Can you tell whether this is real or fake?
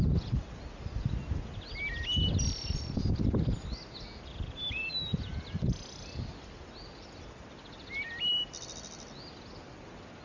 real